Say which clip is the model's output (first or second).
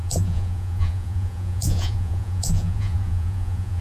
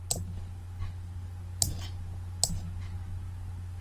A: first